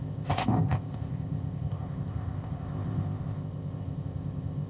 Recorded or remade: remade